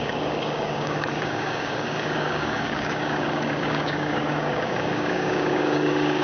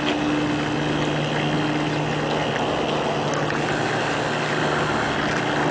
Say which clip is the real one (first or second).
second